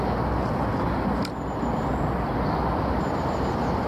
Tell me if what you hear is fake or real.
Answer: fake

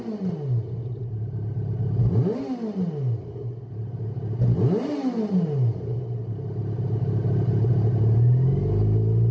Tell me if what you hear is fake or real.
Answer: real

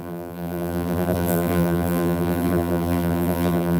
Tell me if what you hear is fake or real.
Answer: fake